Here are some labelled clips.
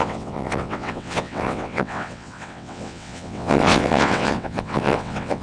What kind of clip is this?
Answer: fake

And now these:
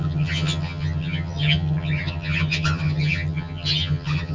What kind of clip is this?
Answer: fake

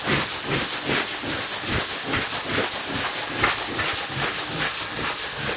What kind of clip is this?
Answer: real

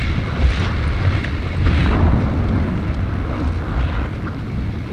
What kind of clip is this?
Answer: real